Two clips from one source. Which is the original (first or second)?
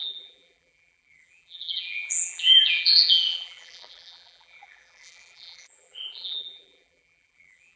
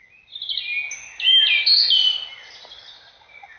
second